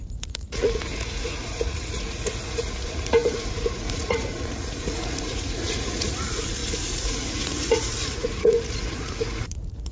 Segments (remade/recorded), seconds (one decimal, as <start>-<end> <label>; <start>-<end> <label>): 0.0-9.9 remade